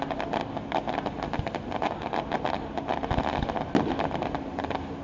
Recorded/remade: recorded